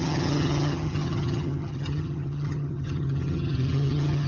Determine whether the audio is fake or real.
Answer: fake